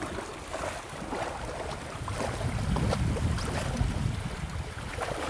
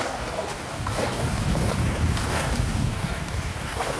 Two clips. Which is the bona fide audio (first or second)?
first